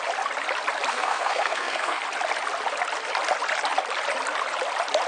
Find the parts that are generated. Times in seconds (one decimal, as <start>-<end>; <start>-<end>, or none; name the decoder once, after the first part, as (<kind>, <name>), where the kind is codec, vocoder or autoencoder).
0.9-2.0 (codec, SNAC)